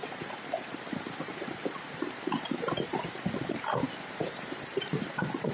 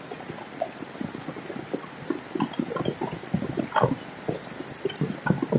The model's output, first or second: first